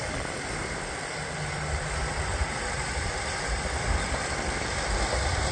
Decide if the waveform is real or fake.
fake